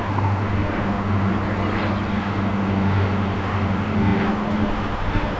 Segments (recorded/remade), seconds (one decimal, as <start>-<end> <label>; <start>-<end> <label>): 0.0-1.3 remade; 1.3-2.1 recorded; 2.1-5.4 remade